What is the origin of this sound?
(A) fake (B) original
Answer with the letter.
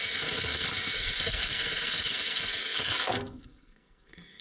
A